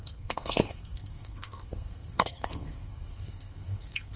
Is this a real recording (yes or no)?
no